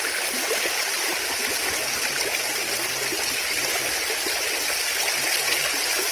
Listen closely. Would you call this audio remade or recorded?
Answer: recorded